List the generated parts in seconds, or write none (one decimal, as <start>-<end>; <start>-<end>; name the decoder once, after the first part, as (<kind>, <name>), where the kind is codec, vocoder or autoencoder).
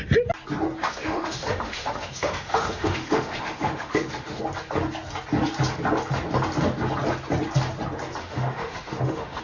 0.8-4.4 (autoencoder, DAC-VAE); 8.2-9.4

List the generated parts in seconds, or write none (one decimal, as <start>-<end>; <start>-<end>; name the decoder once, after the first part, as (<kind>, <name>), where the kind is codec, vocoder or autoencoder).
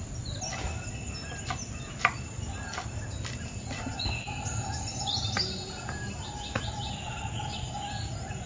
none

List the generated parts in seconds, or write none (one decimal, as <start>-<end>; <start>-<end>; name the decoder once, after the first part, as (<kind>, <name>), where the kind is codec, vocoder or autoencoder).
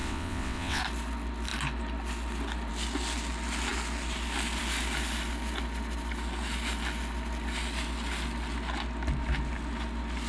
0.0-0.8 (vocoder, WaveNeXt)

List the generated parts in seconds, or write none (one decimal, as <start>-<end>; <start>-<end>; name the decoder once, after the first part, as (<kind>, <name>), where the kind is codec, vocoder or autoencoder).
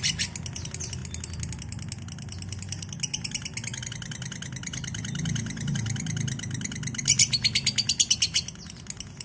none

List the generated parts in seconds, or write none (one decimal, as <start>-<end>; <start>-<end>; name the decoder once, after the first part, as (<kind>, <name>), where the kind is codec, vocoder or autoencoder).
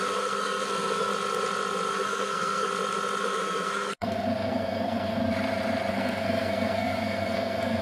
0.0-1.1 (codec, SNAC); 1.9-2.7; 3.2-5.2; 5.9-7.8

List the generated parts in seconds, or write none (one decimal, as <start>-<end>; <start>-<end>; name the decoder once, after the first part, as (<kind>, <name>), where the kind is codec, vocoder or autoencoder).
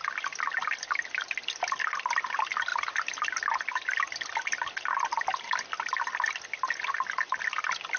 none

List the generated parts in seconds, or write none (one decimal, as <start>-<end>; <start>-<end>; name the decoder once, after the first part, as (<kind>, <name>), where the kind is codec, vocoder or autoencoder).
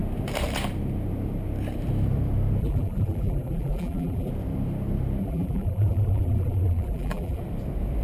2.6-4.3 (vocoder, BigVGAN v2); 5.2-7.4